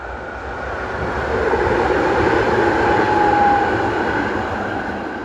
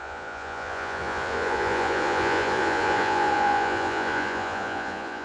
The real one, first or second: first